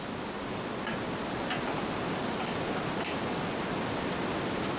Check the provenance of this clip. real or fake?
real